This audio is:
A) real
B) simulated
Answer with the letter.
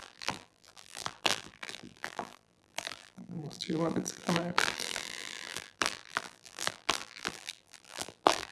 B